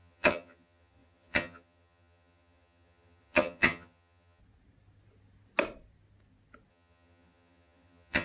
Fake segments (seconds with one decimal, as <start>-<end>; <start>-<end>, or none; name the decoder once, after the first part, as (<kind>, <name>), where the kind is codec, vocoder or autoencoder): 0.0-4.4 (vocoder, HiFi-GAN); 6.7-8.2